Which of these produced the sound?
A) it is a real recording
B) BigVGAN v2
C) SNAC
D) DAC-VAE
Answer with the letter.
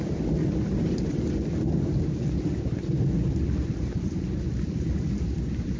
A